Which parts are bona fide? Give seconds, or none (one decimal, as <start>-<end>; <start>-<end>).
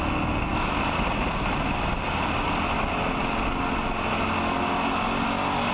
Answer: 0.0-5.7